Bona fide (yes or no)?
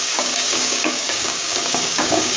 no